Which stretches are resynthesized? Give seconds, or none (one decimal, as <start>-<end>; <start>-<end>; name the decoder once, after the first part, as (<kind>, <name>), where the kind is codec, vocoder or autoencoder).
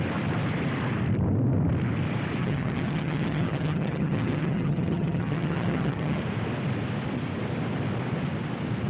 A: 2.4-6.2 (vocoder, HiFi-GAN)